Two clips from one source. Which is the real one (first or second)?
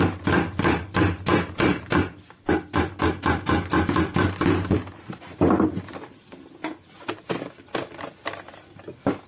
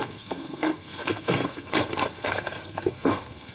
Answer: first